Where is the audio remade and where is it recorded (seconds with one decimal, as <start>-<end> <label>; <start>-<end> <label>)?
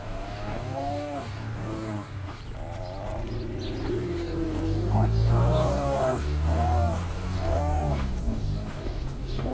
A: 0.0-2.4 remade; 2.4-3.9 recorded; 3.9-9.5 remade